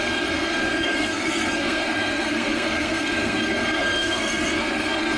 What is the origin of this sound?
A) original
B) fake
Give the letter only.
B